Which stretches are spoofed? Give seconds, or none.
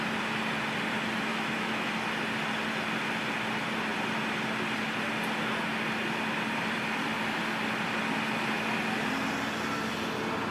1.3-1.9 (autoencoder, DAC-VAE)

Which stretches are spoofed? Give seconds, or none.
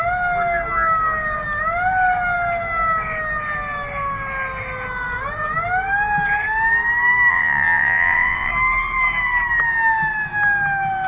7.3-8.5 (vocoder, WaveNeXt)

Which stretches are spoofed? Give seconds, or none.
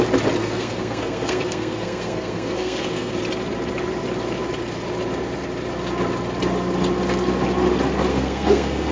0.4-3.1 (codec, SNAC); 8.1-8.9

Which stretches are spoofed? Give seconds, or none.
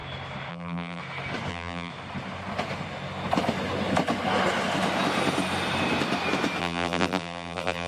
0.5-1.0 (vocoder, BigVGAN v2); 1.5-1.9; 6.6-7.9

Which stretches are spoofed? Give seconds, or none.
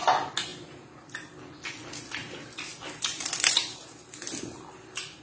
2.2-5.2 (vocoder, BigVGAN v2)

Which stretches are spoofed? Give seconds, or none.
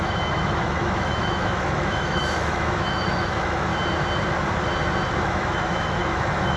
0.0-3.7 (autoencoder, DAC-VAE); 5.1-6.6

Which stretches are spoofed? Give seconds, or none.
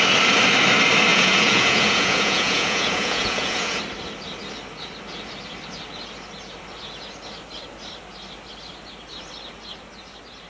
1.1-3.8 (vocoder, Vocos)